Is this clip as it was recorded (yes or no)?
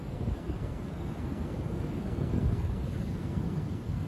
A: no